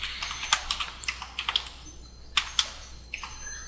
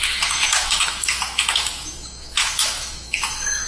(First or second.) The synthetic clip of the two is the second